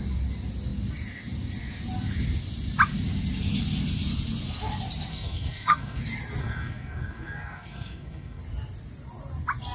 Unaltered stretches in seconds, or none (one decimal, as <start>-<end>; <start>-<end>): 0.0-5.1; 6.0-6.4; 8.4-9.7